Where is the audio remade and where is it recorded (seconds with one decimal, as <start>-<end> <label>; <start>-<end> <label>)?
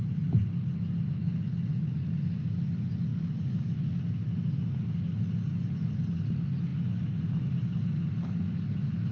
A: 0.0-9.1 recorded